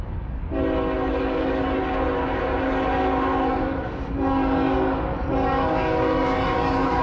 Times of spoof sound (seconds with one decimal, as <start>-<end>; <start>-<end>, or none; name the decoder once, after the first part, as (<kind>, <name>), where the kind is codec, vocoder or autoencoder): 0.0-0.6 (codec, DAC); 1.2-1.8; 3.5-7.0